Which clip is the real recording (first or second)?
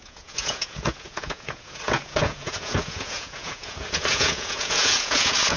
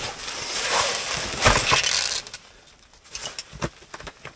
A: second